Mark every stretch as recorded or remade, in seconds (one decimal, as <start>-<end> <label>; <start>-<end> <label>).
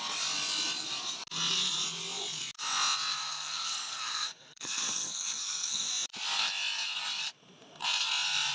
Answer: 0.0-3.2 recorded; 3.2-5.9 remade; 5.9-8.5 recorded